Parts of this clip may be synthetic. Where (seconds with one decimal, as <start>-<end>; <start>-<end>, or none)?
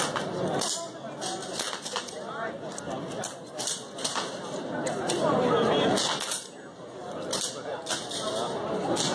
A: none